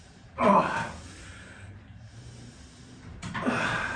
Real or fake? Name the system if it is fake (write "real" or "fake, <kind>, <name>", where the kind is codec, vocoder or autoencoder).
fake, vocoder, BigVGAN v2